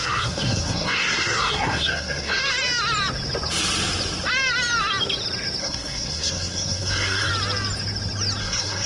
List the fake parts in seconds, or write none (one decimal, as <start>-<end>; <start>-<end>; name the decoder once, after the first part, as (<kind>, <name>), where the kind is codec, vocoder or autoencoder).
0.0-2.4 (codec, SNAC); 5.6-7.3; 8.4-8.9